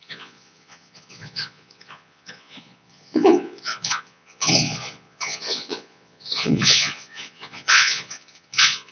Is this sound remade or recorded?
remade